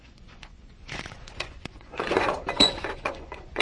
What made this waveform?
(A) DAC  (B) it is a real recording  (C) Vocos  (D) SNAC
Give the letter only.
C